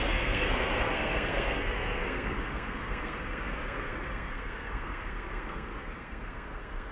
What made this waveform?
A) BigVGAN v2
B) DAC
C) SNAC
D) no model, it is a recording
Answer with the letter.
C